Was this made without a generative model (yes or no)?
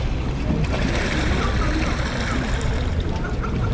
yes